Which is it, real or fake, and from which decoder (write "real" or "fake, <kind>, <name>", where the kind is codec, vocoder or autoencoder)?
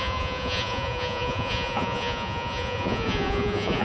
fake, vocoder, Vocos